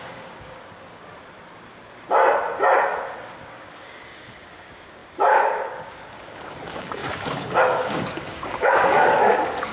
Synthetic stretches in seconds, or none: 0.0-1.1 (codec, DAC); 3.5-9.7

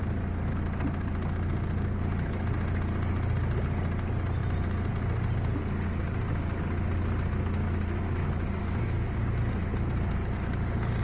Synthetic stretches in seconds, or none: 8.2-9.3 (codec, DAC)

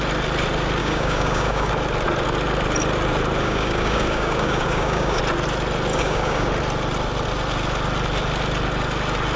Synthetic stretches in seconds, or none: 0.8-1.7 (codec, DAC); 3.4-5.2; 5.9-6.5

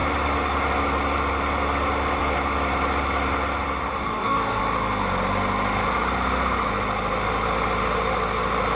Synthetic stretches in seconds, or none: 4.0-4.6 (codec, DAC)